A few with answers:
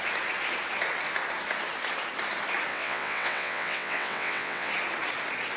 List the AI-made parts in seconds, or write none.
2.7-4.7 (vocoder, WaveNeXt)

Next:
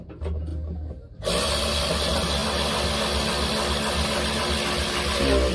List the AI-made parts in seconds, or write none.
none

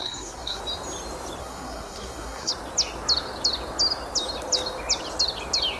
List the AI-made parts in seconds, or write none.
0.0-0.6 (codec, SNAC); 1.4-2.5

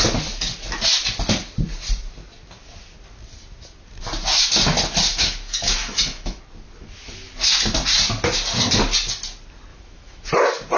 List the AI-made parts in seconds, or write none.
5.1-6.4 (autoencoder, DAC-VAE); 9.7-10.3

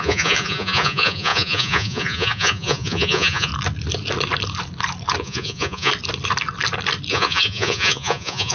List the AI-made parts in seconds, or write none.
0.0-3.5 (vocoder, Vocos); 5.2-5.9; 7.1-8.5

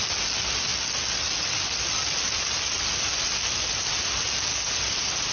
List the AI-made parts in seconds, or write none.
none

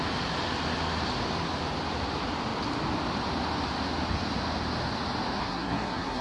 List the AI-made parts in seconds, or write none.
5.4-6.2 (codec, SNAC)